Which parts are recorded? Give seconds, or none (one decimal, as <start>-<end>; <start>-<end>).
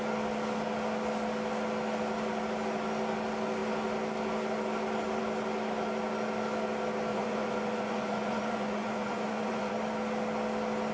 0.0-7.1; 9.7-10.9